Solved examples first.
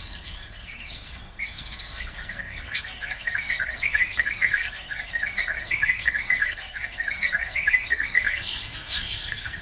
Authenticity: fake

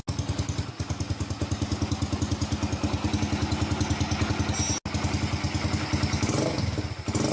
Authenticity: real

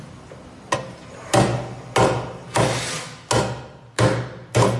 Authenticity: real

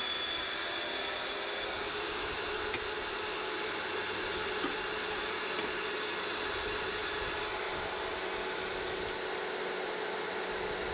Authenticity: real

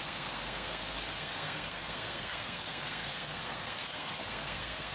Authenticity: fake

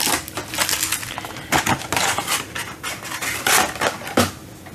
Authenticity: real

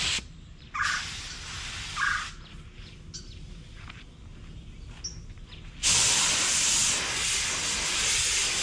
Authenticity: real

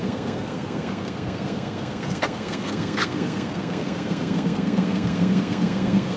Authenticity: fake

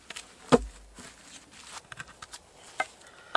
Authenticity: real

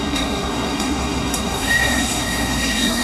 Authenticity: fake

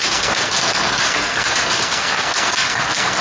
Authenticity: fake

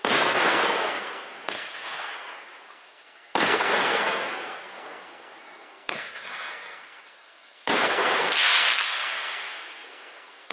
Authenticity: fake